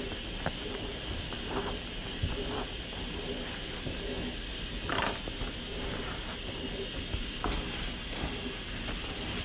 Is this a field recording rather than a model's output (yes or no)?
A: yes